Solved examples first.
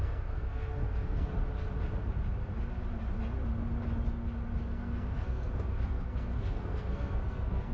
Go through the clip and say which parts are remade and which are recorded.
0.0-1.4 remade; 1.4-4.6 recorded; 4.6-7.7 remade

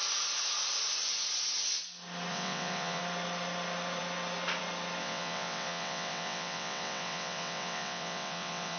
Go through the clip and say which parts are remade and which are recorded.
0.0-2.3 recorded; 2.3-3.0 remade; 3.0-5.0 recorded; 5.0-8.8 remade

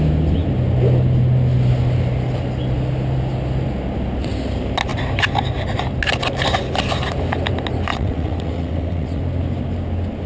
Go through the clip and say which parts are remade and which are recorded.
0.0-7.9 recorded; 7.9-9.2 remade; 9.2-10.3 recorded